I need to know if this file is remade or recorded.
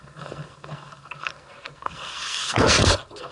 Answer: remade